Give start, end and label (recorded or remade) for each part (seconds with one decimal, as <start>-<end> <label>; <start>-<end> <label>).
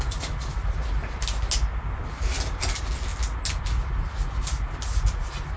0.0-5.6 recorded